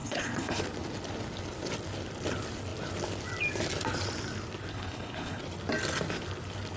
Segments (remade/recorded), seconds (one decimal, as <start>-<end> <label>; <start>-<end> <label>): 0.0-0.6 remade; 0.6-4.7 recorded; 4.7-5.4 remade; 5.4-6.8 recorded